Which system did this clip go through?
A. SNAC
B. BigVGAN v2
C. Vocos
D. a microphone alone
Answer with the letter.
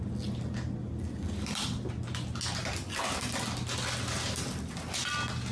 D